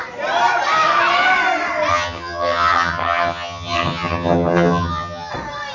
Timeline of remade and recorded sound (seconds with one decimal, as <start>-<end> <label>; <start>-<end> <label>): 0.0-1.9 recorded; 1.9-5.3 remade; 5.3-5.7 recorded